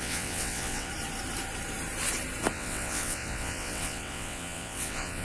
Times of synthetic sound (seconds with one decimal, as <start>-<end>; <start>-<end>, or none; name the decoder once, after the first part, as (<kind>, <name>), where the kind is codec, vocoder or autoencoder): 0.0-0.9 (vocoder, WaveNeXt); 2.5-5.2